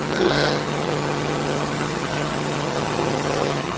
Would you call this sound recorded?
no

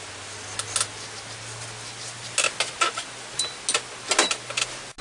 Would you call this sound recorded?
yes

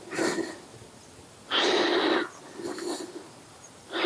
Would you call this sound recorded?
yes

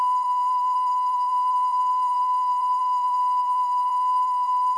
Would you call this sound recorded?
no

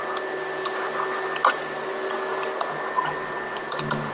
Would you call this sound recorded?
yes